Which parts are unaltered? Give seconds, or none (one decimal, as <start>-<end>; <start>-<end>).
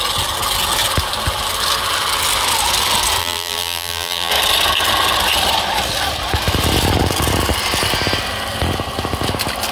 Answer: 0.0-3.2; 4.3-9.7